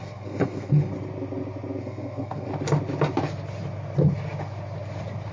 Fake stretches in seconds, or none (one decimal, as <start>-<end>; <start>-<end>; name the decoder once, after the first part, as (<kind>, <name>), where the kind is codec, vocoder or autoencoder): 0.0-0.9 (codec, SNAC); 1.8-2.5